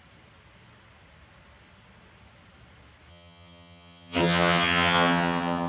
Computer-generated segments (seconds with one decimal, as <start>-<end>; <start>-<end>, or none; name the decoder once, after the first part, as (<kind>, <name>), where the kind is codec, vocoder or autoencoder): 3.1-5.7 (vocoder, HiFi-GAN)